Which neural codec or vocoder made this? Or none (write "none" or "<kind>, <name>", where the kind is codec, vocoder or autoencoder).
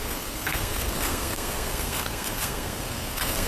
codec, SNAC